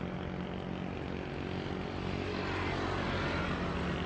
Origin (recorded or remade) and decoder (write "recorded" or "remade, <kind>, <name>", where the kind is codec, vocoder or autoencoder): recorded